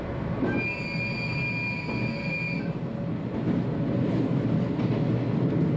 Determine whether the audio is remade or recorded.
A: recorded